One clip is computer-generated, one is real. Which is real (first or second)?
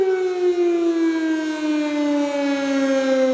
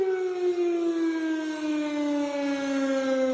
first